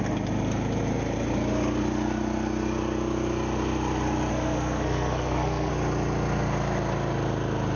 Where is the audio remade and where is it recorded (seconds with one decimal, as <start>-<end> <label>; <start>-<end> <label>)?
0.0-4.3 recorded; 4.3-5.7 remade; 5.7-7.8 recorded

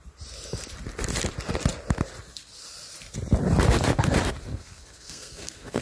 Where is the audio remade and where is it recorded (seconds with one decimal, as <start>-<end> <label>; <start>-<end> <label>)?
0.0-4.5 recorded; 4.5-5.8 remade

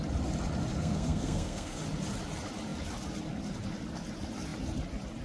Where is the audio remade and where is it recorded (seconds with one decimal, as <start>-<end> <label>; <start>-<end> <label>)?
0.0-0.8 recorded; 0.8-1.8 remade; 1.8-5.2 recorded

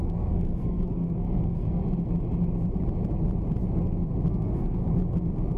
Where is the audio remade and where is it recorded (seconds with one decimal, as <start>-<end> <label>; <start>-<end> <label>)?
0.0-1.8 remade; 1.8-4.3 recorded; 4.3-4.8 remade; 4.8-5.6 recorded

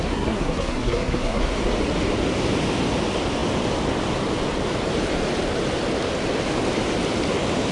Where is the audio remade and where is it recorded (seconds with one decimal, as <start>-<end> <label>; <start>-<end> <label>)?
0.0-1.4 remade; 1.4-7.7 recorded

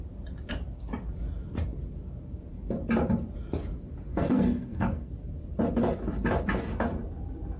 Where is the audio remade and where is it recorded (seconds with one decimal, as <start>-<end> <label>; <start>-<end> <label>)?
0.0-4.1 recorded; 4.1-5.1 remade; 5.1-7.6 recorded

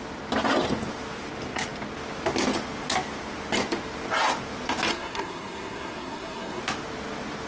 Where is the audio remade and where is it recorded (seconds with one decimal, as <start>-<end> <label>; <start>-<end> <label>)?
0.0-4.9 recorded; 4.9-6.6 remade; 6.6-7.5 recorded